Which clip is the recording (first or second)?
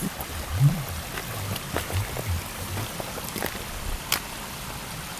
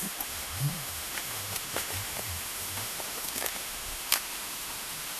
first